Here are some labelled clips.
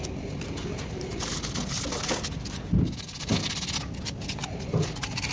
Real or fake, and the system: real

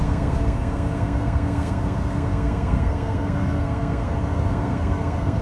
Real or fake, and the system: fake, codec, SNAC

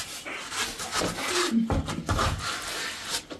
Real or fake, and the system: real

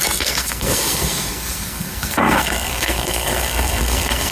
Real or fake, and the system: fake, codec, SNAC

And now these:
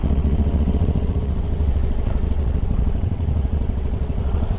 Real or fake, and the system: fake, vocoder, WaveNeXt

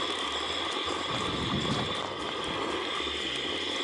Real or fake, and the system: real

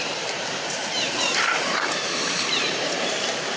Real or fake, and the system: fake, vocoder, BigVGAN v2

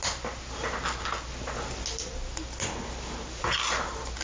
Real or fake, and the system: real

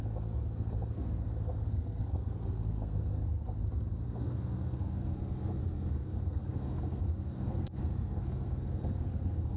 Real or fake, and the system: fake, codec, SNAC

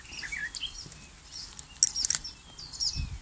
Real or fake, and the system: real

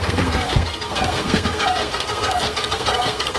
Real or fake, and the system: fake, codec, SNAC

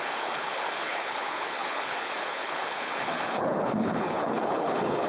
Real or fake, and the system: fake, codec, HILCodec